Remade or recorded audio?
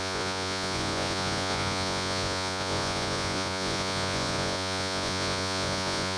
remade